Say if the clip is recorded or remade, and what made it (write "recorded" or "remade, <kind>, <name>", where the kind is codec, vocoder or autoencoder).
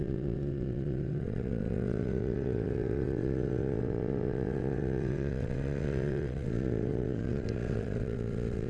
remade, vocoder, WaveNeXt